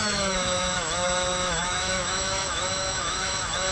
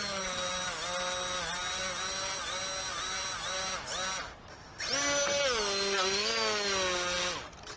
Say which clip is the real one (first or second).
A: second